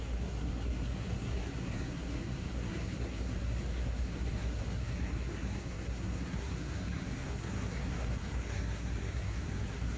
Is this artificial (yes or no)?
yes